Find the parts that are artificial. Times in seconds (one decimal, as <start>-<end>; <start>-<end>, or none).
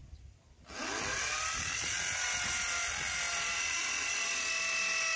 none